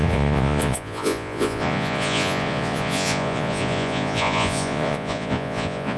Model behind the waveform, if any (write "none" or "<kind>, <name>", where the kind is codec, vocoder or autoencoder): vocoder, Vocos